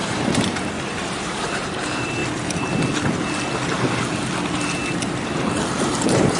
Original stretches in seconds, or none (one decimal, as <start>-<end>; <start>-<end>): 2.2-6.0